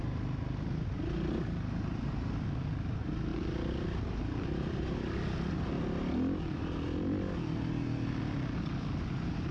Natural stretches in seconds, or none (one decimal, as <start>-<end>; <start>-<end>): 0.0-9.5